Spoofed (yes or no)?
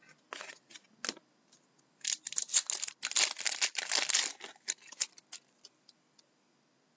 no